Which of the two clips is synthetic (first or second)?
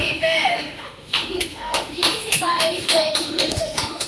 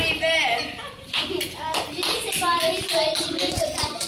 first